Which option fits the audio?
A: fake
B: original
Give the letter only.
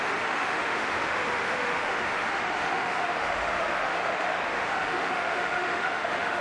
A